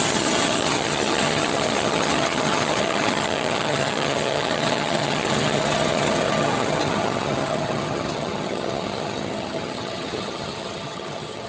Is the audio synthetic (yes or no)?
yes